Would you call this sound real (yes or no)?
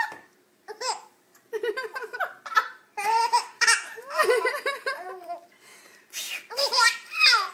no